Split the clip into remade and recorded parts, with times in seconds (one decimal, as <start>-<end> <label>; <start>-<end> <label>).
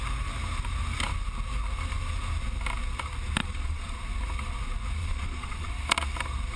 0.0-3.4 recorded; 3.4-3.9 remade; 3.9-5.0 recorded; 5.0-5.7 remade; 5.7-6.6 recorded